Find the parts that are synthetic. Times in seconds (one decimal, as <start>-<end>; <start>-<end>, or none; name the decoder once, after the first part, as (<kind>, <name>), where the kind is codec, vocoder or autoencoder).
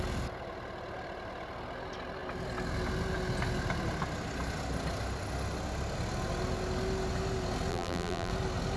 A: 7.7-8.3 (vocoder, BigVGAN v2)